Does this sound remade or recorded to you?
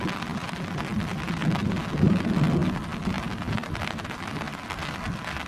recorded